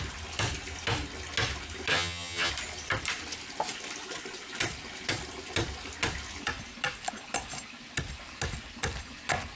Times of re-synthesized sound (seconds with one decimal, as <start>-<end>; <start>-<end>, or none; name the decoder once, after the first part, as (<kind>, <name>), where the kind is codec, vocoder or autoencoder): 1.9-2.5 (vocoder, HiFi-GAN)